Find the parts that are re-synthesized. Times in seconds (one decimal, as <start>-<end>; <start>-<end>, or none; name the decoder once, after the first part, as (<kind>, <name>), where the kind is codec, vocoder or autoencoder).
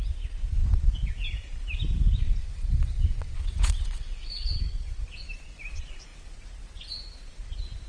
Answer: 2.4-4.6 (vocoder, WaveNeXt)